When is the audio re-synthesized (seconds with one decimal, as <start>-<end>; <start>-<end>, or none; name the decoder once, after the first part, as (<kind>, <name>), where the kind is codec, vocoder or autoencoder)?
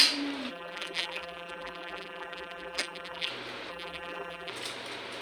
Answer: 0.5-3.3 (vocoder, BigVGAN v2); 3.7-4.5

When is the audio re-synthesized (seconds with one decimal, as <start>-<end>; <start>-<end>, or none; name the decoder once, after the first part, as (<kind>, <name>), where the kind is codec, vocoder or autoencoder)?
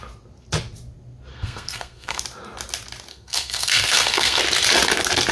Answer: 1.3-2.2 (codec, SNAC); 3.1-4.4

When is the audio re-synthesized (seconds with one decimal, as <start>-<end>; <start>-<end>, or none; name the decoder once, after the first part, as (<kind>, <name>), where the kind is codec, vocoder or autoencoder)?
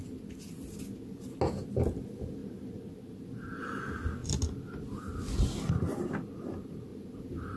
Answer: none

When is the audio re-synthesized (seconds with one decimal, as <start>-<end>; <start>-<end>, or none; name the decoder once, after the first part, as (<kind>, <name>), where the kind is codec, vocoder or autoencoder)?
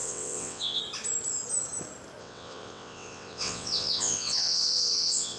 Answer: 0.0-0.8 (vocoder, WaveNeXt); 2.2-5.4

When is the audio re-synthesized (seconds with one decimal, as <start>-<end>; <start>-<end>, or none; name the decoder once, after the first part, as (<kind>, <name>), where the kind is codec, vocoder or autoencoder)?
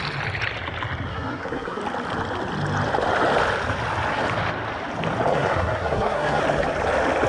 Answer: 1.1-1.8 (codec, SNAC); 5.3-6.4